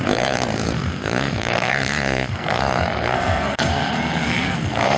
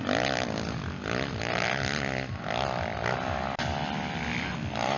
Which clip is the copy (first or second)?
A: first